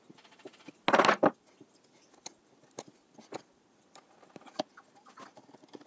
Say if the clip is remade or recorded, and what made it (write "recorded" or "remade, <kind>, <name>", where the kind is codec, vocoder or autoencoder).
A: recorded